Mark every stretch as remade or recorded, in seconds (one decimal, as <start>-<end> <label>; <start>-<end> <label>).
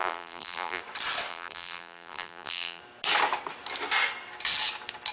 0.0-0.8 remade; 0.8-1.3 recorded; 1.3-2.8 remade; 2.8-5.1 recorded